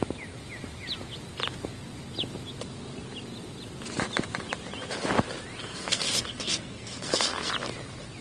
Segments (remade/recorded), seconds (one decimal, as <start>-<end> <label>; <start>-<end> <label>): 0.0-5.6 recorded; 5.6-7.5 remade; 7.5-8.2 recorded